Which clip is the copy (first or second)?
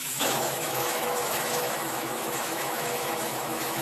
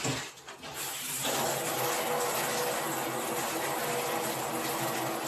first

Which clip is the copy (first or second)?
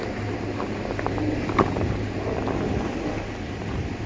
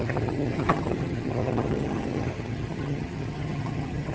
second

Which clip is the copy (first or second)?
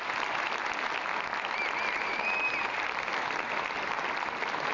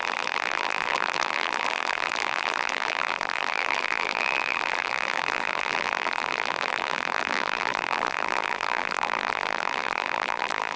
second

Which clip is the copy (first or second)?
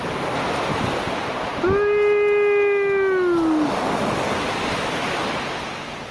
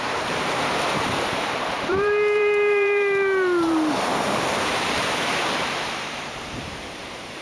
second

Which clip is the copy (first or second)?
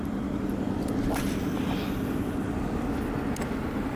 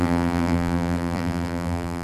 second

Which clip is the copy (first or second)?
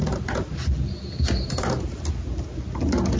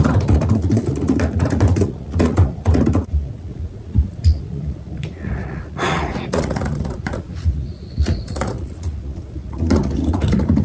second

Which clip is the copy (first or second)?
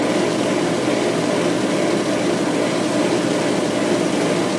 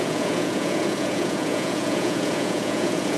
second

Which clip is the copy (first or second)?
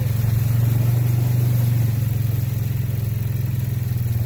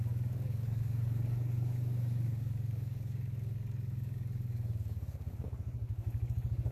second